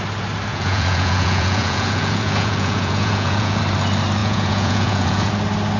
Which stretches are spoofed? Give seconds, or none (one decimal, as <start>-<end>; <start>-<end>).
0.5-3.6; 4.2-5.3